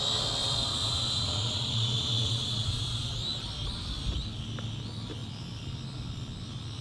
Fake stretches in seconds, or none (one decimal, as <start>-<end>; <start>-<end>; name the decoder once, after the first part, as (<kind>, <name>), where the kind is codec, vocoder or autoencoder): 0.4-3.1 (vocoder, Vocos)

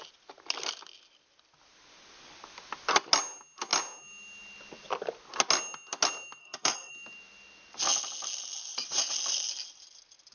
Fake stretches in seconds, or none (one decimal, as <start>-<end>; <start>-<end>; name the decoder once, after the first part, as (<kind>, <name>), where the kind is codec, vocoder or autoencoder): 6.4-6.9 (codec, SNAC)

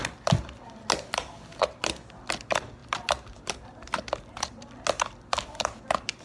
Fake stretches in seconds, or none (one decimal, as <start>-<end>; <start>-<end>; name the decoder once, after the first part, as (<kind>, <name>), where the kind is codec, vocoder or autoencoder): none

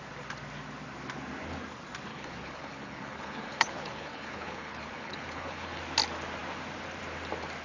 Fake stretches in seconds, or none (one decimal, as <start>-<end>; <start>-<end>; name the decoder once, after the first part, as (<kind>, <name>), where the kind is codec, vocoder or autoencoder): 2.1-5.8 (codec, HILCodec)

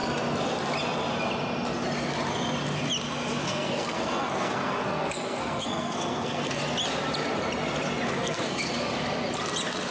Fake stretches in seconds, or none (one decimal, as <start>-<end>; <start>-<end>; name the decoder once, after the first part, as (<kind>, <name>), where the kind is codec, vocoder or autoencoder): 3.4-6.6 (codec, SNAC); 8.1-8.7

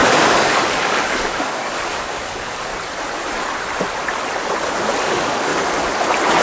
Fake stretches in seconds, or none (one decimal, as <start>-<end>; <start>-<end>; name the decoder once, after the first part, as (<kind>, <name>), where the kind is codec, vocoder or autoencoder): 0.0-2.7 (codec, DAC); 5.0-5.5

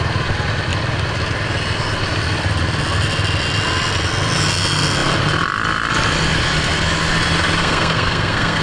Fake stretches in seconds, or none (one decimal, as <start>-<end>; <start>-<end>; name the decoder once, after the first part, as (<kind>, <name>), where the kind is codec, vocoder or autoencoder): 7.6-8.6 (codec, SNAC)

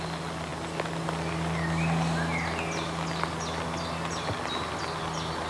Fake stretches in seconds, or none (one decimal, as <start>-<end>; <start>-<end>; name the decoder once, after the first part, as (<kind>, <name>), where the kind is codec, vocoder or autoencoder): none